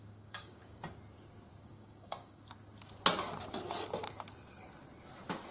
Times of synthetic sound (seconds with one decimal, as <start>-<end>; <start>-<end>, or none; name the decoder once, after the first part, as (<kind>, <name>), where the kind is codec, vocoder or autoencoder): 0.0-0.8 (codec, DAC); 1.6-2.4